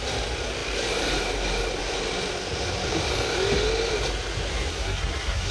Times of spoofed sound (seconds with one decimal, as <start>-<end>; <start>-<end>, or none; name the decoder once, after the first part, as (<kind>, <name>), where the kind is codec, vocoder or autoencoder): 4.7-5.5 (codec, SNAC)